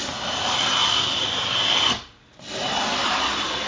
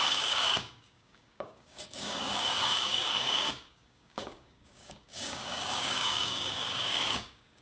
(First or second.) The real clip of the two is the first